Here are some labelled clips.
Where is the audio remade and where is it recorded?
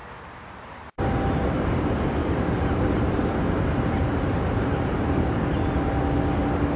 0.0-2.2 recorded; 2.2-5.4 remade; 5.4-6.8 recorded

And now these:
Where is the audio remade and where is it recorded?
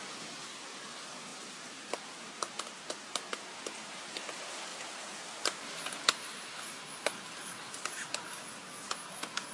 0.0-4.7 recorded; 4.7-5.9 remade; 5.9-9.5 recorded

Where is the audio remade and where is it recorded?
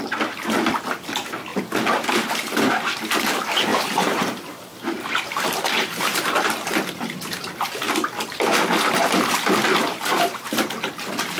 0.0-3.7 recorded; 3.7-6.9 remade; 6.9-9.9 recorded; 9.9-10.5 remade; 10.5-11.4 recorded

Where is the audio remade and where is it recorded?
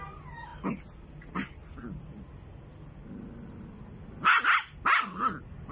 0.0-5.7 recorded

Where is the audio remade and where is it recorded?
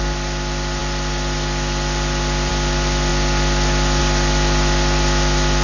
0.0-5.6 recorded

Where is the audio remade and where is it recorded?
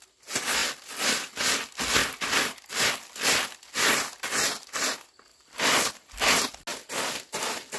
0.0-0.6 recorded; 0.6-1.4 remade; 1.4-5.3 recorded; 5.3-5.9 remade; 5.9-7.8 recorded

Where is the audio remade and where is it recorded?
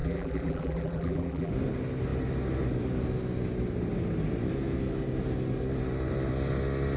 0.0-1.5 remade; 1.5-7.0 recorded